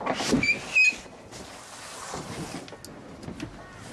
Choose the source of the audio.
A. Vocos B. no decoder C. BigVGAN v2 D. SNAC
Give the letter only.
B